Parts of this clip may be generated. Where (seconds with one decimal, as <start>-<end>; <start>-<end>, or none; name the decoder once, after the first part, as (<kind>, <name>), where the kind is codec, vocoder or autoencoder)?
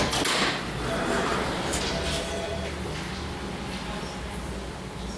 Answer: none